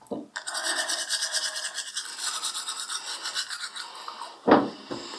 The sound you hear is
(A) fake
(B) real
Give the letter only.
B